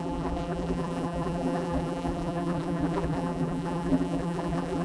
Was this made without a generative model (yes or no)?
no